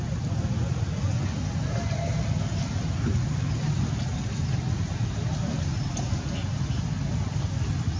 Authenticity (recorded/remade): recorded